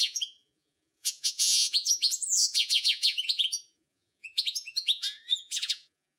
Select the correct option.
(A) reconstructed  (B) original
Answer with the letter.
A